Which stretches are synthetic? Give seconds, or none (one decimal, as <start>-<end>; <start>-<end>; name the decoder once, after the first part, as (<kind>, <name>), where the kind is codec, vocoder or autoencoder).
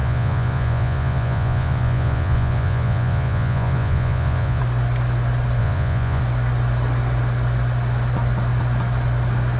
0.0-4.6 (vocoder, Vocos); 5.6-6.2